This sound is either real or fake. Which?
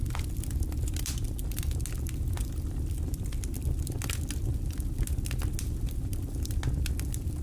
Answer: real